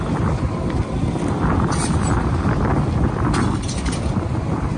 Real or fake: real